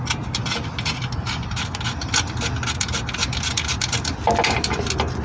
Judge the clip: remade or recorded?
recorded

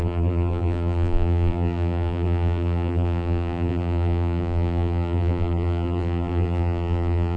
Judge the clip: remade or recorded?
remade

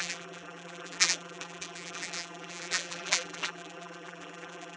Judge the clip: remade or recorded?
remade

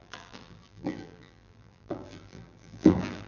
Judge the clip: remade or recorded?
remade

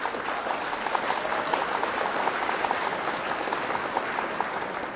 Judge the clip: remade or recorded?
recorded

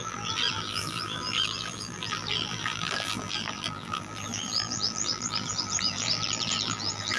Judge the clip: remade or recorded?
remade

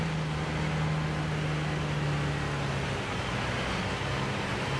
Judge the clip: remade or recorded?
recorded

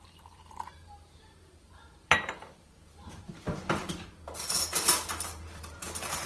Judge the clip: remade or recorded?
remade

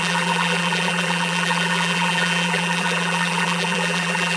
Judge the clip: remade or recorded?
remade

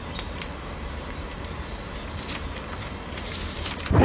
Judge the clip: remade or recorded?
remade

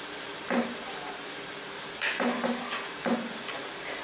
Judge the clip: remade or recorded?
remade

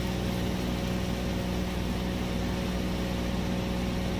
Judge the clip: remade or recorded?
recorded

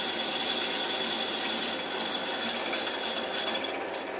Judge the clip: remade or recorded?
recorded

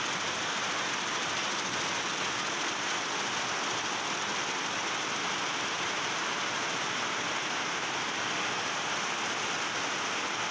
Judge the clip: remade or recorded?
recorded